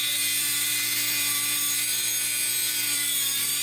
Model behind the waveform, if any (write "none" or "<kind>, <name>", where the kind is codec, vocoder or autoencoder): vocoder, BigVGAN v2